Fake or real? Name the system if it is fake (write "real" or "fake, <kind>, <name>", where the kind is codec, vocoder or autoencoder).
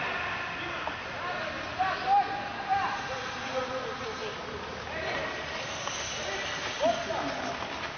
real